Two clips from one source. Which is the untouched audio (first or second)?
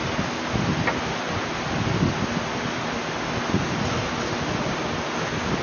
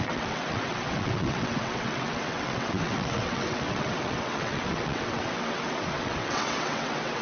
first